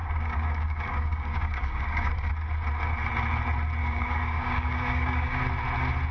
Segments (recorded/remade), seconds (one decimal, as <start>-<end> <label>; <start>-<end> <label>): 0.0-2.3 remade; 2.3-3.8 recorded; 3.8-5.4 remade; 5.4-6.1 recorded